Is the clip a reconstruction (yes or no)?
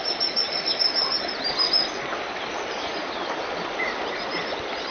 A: no